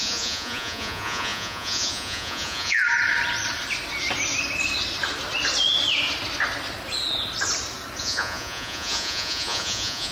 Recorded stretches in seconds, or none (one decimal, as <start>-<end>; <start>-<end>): 2.8-8.0